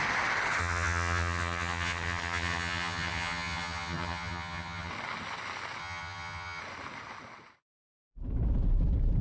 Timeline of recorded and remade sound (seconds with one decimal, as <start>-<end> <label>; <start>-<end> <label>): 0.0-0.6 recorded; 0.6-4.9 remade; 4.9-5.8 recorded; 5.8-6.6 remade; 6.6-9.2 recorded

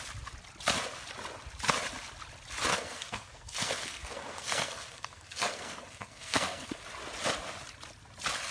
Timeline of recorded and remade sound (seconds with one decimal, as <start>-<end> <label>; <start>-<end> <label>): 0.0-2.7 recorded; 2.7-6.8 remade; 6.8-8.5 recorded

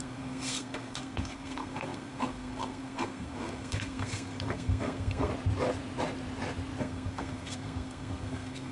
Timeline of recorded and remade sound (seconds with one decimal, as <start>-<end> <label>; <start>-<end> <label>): 0.0-5.3 remade; 5.3-6.8 recorded; 6.8-8.7 remade

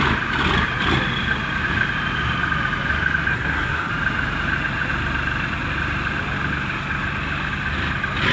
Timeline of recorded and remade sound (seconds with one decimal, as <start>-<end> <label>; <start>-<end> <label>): 0.0-3.3 recorded; 3.3-3.9 remade; 3.9-8.3 recorded

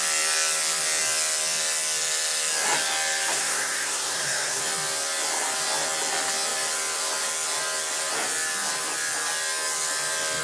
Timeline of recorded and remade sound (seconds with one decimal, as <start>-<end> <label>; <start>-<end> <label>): 0.0-3.3 recorded; 3.3-4.6 remade; 4.6-10.4 recorded

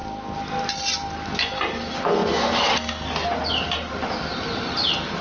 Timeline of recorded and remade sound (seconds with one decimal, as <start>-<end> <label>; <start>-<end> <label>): 0.0-1.6 recorded; 1.6-5.2 remade

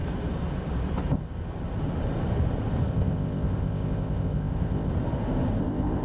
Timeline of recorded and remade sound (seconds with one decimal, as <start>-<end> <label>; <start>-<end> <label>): 0.0-2.9 recorded; 2.9-4.9 remade; 4.9-5.6 recorded; 5.6-6.0 remade